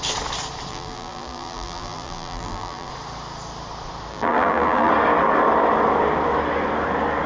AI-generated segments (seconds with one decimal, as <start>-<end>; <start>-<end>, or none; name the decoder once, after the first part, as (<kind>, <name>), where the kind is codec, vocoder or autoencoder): 0.7-2.9 (vocoder, BigVGAN v2); 4.1-4.9